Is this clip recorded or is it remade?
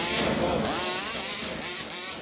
recorded